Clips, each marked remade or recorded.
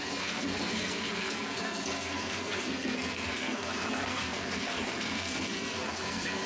remade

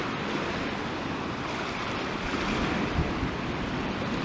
recorded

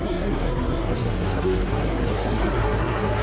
remade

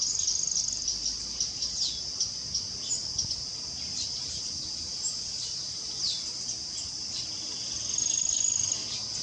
recorded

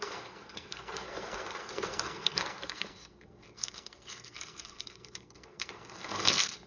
remade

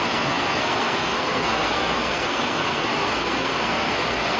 remade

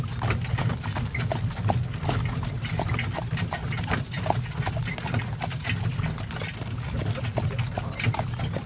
recorded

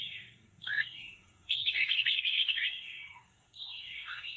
remade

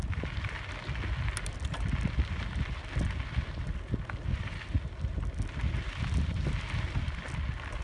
recorded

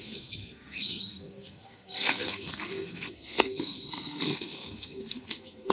remade